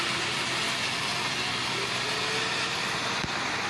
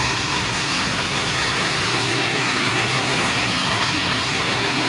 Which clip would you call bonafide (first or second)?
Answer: first